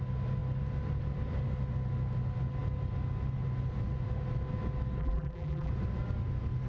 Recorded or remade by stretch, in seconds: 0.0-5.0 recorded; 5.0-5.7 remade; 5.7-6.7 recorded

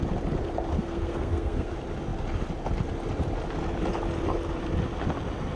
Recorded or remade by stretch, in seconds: 0.0-0.7 recorded; 0.7-1.7 remade; 1.7-5.6 recorded